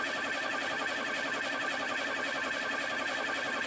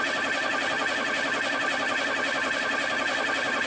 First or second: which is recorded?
second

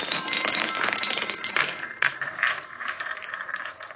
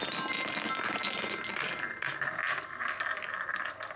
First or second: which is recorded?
second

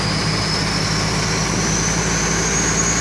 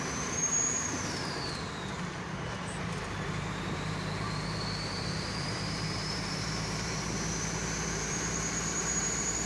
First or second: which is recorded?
first